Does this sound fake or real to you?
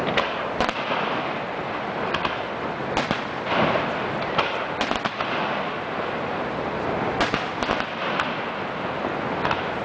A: real